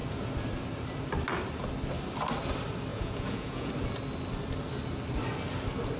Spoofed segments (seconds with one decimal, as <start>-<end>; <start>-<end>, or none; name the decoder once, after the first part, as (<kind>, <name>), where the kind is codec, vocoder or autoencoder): 2.9-3.7 (vocoder, Vocos)